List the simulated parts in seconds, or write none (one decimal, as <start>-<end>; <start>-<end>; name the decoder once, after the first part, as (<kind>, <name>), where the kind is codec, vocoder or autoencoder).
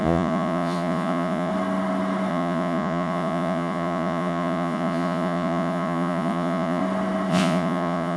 0.0-1.5 (vocoder, Vocos); 2.3-6.8; 7.3-8.2